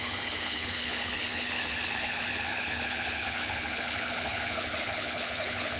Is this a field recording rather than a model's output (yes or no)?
no